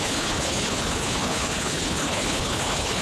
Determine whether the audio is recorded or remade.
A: remade